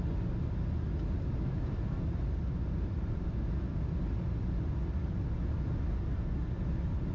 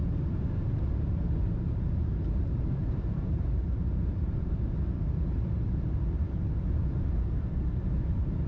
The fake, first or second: second